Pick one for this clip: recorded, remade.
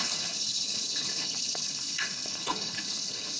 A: remade